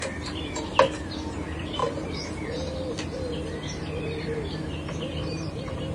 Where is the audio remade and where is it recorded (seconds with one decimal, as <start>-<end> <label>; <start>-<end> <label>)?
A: 0.0-0.7 remade; 0.7-1.3 recorded; 1.3-1.8 remade; 1.8-4.7 recorded; 4.7-5.9 remade

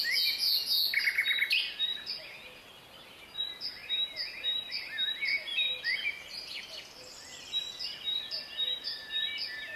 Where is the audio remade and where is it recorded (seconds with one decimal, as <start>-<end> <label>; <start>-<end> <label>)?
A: 0.0-3.8 recorded; 3.8-6.8 remade; 6.8-9.8 recorded

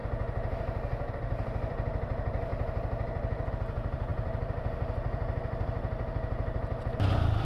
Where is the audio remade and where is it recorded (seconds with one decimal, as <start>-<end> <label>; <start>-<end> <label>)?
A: 0.0-1.1 recorded; 1.1-7.4 remade

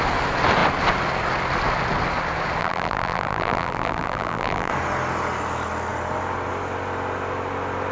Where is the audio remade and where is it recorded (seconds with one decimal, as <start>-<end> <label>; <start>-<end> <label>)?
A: 0.0-2.6 recorded; 2.6-4.7 remade; 4.7-7.9 recorded